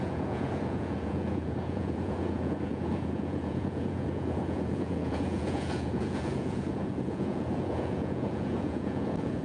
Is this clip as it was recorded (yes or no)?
no